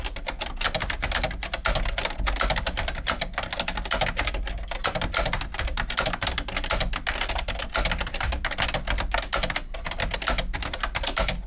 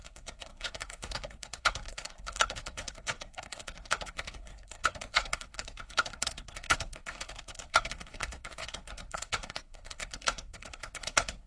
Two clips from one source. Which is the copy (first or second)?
second